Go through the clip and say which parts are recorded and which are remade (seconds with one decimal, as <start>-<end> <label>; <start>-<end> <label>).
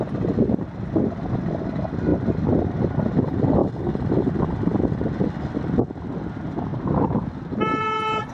0.0-8.3 recorded